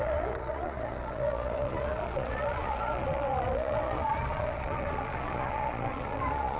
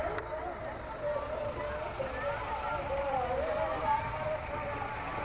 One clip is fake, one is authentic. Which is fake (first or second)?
first